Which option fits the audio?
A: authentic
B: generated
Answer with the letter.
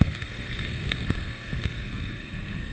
B